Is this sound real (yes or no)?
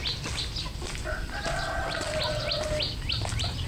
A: yes